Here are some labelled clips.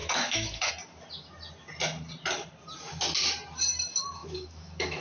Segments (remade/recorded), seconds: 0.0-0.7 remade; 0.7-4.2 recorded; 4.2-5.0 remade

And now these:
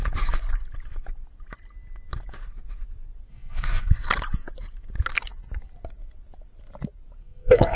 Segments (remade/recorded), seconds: 0.0-3.3 recorded; 3.3-3.9 remade; 3.9-7.2 recorded; 7.2-7.8 remade

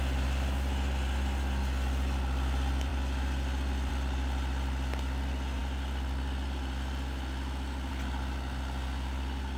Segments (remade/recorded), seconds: 0.0-9.6 recorded

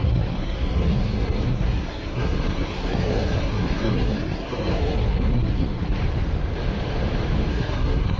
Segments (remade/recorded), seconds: 0.0-6.0 remade; 6.0-7.5 recorded; 7.5-8.2 remade